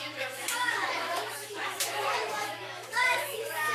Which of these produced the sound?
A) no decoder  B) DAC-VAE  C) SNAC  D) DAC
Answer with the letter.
B